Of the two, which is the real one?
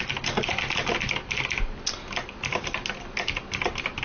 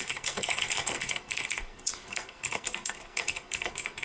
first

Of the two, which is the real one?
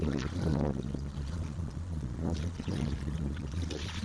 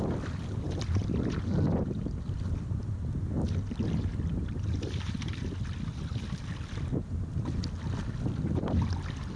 second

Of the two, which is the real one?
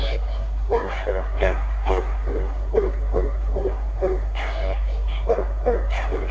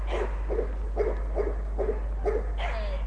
second